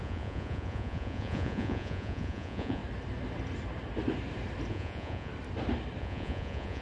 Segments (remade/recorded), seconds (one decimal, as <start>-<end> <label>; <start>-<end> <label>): 0.0-2.8 remade; 2.8-4.7 recorded; 4.7-5.3 remade; 5.3-6.0 recorded; 6.0-6.8 remade